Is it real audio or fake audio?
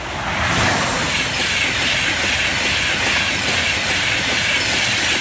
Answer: real